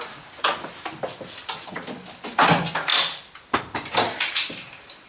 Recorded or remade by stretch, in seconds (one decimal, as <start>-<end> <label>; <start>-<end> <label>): 0.0-2.9 recorded; 2.9-4.3 remade; 4.3-5.1 recorded